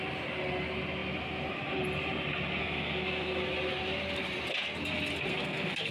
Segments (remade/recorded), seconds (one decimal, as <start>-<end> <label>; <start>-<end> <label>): 0.0-2.6 recorded; 2.6-3.4 remade; 3.4-5.3 recorded; 5.3-5.9 remade